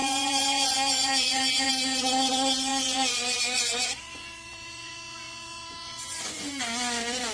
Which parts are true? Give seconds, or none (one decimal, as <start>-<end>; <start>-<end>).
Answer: 1.7-2.7; 6.6-7.3